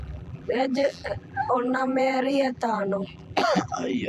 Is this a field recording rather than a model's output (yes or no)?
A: no